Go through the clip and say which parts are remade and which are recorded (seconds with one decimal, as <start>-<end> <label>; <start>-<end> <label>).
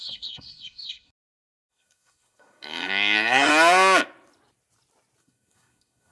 0.0-3.5 remade; 3.5-5.2 recorded; 5.2-6.1 remade